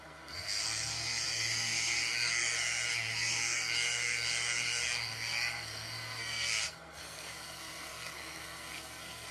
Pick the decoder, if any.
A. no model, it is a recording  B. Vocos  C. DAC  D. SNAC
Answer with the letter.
D